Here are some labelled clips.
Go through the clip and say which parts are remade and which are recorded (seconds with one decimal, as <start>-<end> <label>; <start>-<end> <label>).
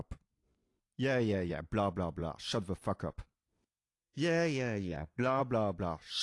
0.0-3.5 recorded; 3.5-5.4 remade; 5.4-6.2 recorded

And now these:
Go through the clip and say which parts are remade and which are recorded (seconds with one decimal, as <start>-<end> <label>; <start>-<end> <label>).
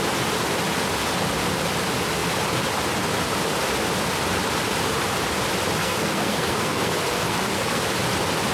0.0-5.8 recorded; 5.8-7.8 remade; 7.8-8.5 recorded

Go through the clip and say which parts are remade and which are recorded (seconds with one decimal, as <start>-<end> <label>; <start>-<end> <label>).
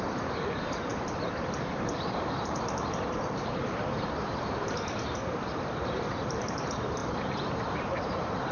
0.0-8.5 remade